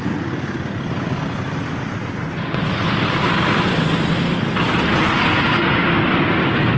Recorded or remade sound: recorded